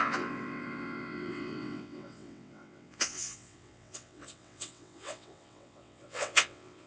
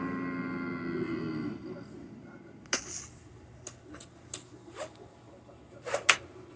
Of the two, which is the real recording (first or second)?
second